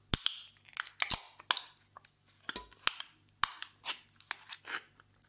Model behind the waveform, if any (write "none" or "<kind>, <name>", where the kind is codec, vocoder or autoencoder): none